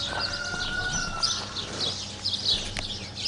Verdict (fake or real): real